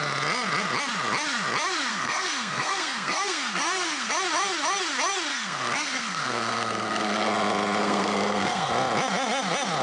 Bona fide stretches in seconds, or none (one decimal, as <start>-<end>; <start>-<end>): 0.0-1.9; 4.1-5.3; 7.3-7.8; 8.7-9.8